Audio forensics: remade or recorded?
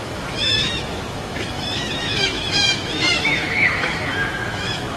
remade